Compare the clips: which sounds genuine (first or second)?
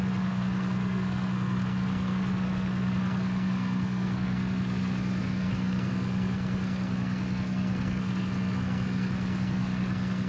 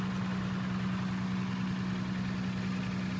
second